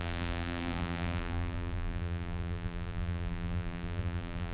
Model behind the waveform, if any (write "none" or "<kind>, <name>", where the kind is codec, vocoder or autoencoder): vocoder, BigVGAN v2